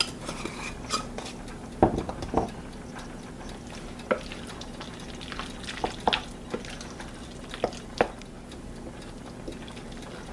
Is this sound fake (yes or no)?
no